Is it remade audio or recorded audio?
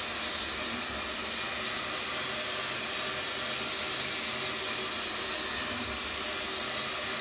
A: recorded